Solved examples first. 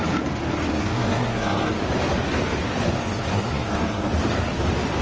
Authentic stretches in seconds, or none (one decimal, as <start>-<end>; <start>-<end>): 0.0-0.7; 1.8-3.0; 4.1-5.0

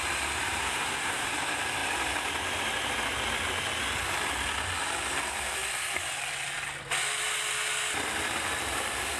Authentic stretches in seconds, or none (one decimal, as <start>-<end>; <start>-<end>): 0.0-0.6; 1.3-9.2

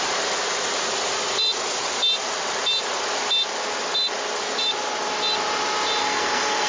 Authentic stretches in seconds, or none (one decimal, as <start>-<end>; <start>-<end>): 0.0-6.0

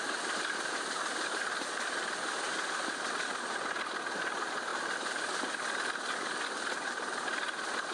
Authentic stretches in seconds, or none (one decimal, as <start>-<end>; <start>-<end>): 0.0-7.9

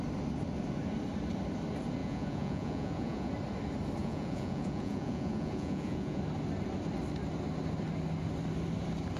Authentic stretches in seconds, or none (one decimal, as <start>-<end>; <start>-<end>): 0.0-2.0; 3.3-4.0; 6.2-9.2

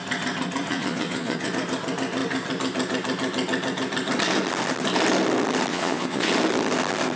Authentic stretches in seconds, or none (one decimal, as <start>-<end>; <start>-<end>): 0.0-0.7; 1.5-5.7; 6.3-7.2

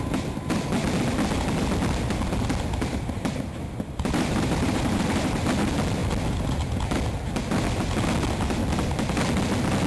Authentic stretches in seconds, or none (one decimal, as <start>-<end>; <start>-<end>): 0.0-2.9; 5.5-9.9

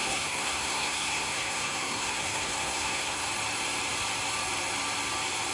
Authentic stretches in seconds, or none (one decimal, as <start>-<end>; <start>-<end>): 3.3-5.5